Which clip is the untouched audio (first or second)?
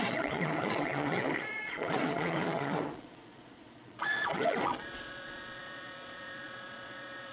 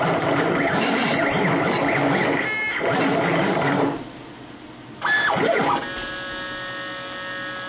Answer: second